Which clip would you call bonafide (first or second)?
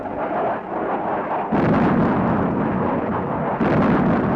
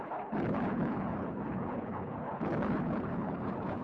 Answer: first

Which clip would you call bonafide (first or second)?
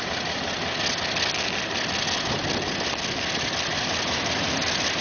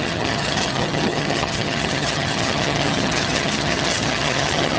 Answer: first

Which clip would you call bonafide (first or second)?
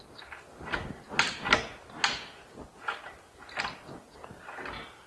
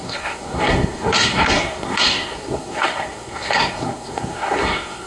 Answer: first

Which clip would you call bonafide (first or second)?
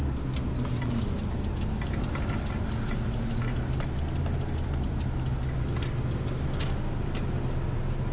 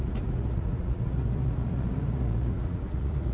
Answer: first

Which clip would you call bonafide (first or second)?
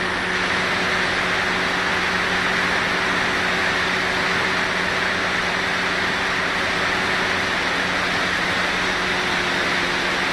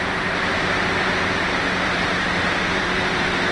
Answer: first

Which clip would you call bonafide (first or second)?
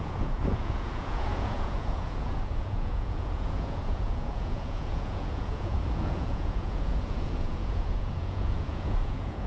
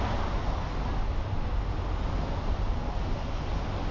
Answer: second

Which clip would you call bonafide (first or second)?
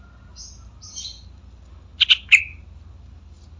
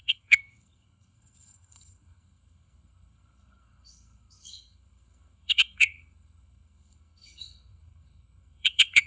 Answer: first